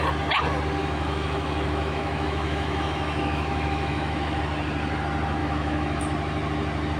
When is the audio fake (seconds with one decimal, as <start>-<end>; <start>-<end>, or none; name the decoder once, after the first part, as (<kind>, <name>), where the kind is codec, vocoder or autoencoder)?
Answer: 0.8-4.4 (autoencoder, DAC-VAE); 5.4-6.0